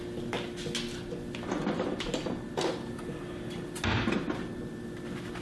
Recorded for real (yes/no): yes